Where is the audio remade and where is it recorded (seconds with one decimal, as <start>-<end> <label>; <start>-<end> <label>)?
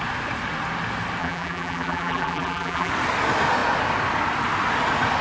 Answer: 0.0-1.2 recorded; 1.2-2.9 remade; 2.9-5.2 recorded